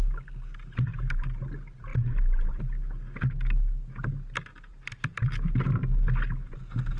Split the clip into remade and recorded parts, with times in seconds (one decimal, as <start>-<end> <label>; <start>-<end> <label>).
0.0-0.9 recorded; 0.9-1.5 remade; 1.5-1.9 recorded; 1.9-2.6 remade; 2.6-4.7 recorded; 4.7-5.2 remade; 5.2-7.0 recorded